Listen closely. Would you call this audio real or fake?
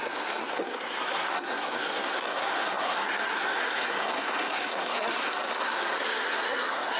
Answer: fake